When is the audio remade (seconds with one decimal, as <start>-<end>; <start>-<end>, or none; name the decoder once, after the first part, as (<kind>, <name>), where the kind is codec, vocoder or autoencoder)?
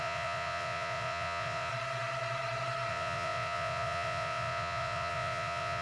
0.0-1.7 (vocoder, Vocos); 2.9-5.8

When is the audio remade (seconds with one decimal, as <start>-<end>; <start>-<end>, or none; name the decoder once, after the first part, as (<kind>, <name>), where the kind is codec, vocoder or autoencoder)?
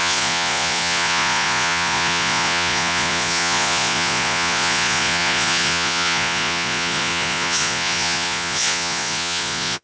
0.0-9.8 (vocoder, Vocos)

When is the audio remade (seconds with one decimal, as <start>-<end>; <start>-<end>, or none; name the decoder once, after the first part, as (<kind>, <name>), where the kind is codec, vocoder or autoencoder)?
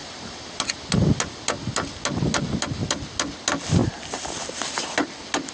none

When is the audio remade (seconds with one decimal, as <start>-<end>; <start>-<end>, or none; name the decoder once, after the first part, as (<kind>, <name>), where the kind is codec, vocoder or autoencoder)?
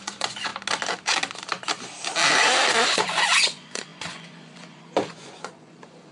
0.0-0.5 (vocoder, Vocos); 3.0-6.1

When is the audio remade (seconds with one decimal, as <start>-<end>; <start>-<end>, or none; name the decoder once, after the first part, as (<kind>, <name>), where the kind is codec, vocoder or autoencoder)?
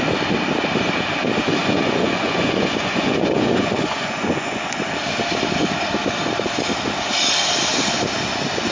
1.6-4.8 (vocoder, Vocos)